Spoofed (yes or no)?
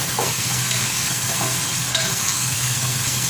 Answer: yes